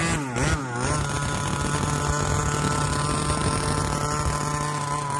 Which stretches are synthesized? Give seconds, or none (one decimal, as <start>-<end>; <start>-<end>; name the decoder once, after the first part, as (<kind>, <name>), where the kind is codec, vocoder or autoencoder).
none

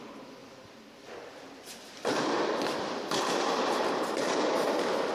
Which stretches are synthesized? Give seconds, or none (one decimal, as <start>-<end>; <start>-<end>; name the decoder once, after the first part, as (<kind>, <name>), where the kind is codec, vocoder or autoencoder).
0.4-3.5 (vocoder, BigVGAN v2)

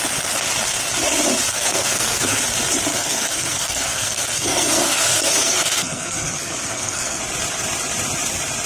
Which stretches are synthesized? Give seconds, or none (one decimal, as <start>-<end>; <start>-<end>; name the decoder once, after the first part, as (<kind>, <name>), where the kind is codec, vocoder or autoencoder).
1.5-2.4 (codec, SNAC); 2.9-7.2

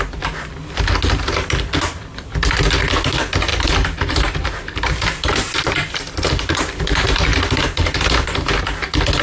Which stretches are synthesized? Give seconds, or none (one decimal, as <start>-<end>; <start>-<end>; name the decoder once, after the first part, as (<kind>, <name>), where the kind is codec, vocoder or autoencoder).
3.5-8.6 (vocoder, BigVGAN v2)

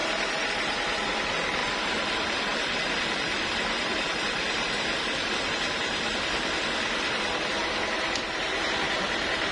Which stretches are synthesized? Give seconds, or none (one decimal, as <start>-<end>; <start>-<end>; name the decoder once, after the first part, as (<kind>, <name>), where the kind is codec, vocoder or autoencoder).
0.0-1.2 (vocoder, BigVGAN v2); 1.6-5.3